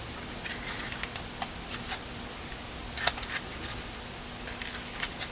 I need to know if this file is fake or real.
real